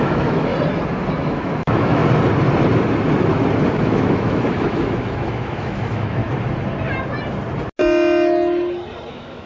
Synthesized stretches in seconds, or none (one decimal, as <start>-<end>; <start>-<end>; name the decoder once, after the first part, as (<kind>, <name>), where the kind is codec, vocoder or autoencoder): 0.0-0.5 (autoencoder, DAC-VAE); 1.1-2.0; 3.7-6.2; 9.1-9.5